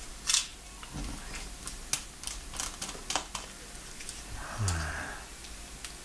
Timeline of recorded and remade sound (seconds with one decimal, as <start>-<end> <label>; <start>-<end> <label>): 0.0-6.0 recorded